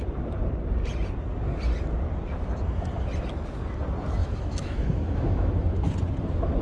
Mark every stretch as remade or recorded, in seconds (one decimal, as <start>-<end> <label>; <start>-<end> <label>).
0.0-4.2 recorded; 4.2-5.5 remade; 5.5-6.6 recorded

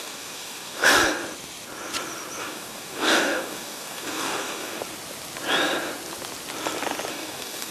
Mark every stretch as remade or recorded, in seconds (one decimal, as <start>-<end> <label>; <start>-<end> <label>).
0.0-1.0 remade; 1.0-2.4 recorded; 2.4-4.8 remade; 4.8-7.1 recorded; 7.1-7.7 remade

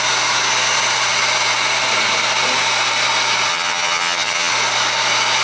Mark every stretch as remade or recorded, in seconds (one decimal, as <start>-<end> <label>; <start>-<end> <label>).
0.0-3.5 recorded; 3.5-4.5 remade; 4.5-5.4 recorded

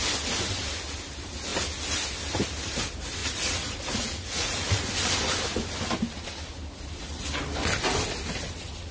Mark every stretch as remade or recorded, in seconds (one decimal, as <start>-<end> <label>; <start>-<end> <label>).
0.0-3.2 recorded; 3.2-4.9 remade; 4.9-8.9 recorded

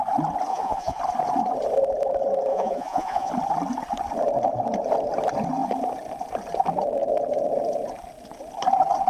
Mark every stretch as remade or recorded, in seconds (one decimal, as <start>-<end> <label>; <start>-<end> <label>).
0.0-0.5 recorded; 0.5-1.0 remade; 1.0-2.5 recorded; 2.5-3.3 remade; 3.3-9.1 recorded

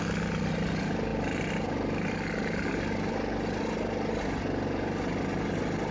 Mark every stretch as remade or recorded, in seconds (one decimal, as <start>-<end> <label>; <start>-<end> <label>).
0.0-5.9 recorded